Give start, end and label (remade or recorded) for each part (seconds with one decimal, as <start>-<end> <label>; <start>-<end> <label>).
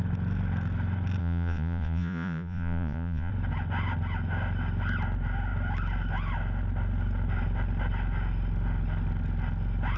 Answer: 0.0-1.2 recorded; 1.2-3.3 remade; 3.3-10.0 recorded